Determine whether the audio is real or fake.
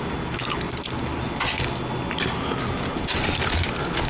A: real